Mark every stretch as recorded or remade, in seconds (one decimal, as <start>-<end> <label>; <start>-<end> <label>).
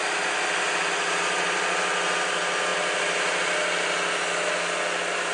0.0-5.3 recorded